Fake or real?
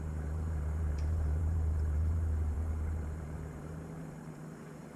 fake